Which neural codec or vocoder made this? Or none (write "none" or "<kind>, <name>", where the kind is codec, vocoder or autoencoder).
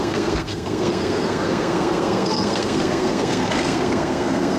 codec, SNAC